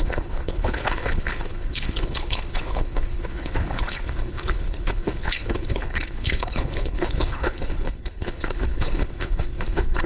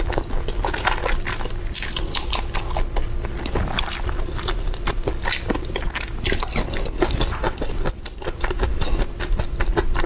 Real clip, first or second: second